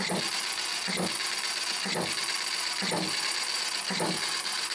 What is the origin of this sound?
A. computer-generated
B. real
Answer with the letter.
B